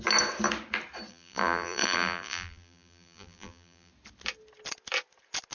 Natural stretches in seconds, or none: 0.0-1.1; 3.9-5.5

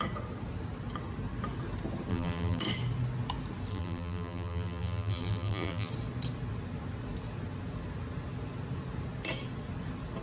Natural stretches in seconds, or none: 0.0-2.1; 2.6-3.7; 5.9-10.2

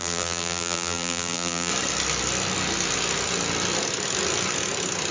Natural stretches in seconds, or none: 1.7-5.1